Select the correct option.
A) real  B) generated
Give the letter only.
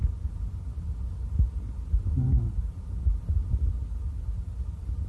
A